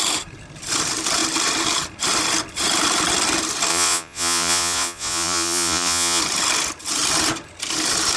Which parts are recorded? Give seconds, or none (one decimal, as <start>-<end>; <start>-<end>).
0.0-3.7; 6.2-8.2